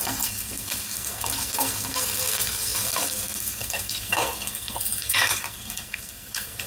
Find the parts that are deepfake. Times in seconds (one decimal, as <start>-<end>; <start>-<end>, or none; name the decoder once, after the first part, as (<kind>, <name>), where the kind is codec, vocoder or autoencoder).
0.0-6.7 (codec, SNAC)